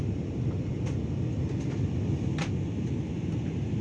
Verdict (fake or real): real